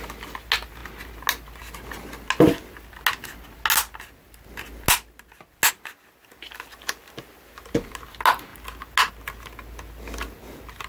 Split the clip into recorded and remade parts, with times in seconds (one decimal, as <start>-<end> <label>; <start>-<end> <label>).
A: 0.0-10.9 recorded

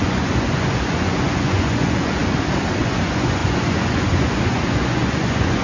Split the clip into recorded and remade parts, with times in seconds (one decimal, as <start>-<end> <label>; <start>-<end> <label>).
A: 0.0-2.2 remade; 2.2-2.8 recorded; 2.8-5.6 remade

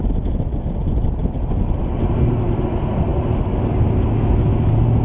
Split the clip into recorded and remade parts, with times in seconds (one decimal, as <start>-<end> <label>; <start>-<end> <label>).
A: 0.0-5.0 recorded

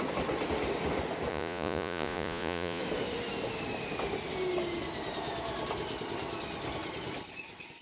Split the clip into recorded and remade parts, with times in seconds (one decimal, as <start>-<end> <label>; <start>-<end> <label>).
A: 0.0-1.3 recorded; 1.3-2.8 remade; 2.8-7.8 recorded

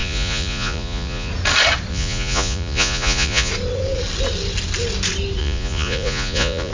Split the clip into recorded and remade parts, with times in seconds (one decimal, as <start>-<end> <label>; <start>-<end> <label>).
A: 0.0-1.3 remade; 1.3-1.9 recorded; 1.9-3.5 remade; 3.5-5.4 recorded; 5.4-6.7 remade